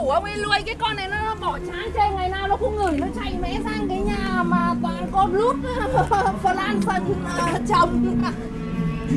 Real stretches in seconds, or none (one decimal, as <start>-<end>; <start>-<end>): 0.0-9.2